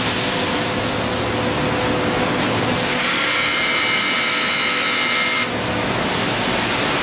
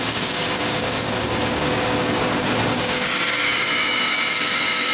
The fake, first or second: second